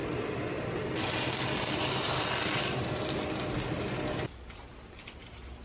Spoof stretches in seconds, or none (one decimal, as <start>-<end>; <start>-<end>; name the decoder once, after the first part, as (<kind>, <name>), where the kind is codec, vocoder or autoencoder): none